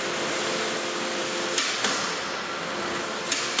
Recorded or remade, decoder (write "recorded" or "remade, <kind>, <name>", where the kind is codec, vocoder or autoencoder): recorded